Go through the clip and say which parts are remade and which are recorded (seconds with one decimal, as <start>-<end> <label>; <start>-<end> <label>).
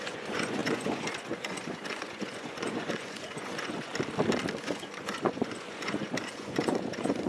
0.0-3.9 remade; 3.9-4.6 recorded; 4.6-7.3 remade